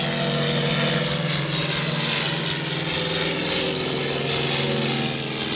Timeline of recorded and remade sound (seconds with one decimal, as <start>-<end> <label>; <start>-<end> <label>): 0.0-5.6 recorded